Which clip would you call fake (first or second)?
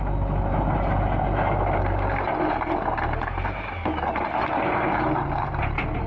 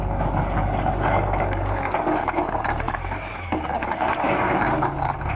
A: second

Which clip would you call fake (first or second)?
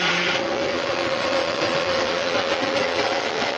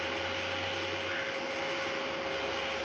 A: first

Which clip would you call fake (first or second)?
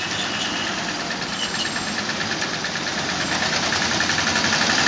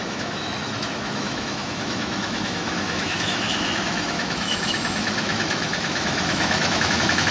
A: second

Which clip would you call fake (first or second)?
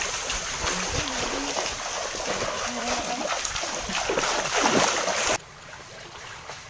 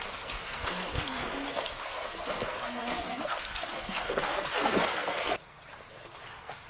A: second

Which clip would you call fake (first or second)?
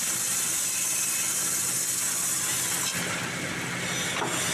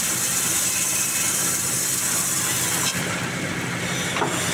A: second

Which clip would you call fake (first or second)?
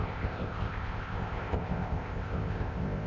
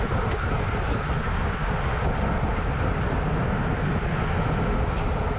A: first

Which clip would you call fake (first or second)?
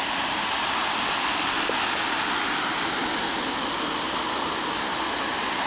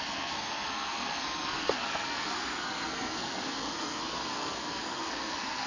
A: second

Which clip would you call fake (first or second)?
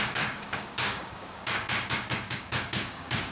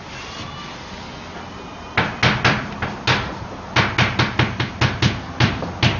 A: first